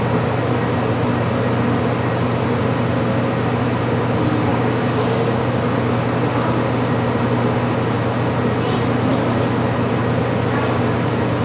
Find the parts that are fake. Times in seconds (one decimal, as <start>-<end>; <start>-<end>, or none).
4.5-5.4